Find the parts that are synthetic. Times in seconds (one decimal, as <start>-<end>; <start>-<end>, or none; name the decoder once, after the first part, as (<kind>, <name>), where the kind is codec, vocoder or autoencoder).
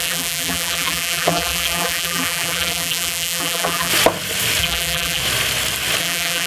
0.0-3.9 (vocoder, BigVGAN v2); 4.6-5.2; 6.0-6.5